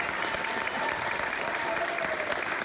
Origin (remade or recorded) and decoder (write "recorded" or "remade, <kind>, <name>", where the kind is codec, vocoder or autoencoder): remade, vocoder, BigVGAN v2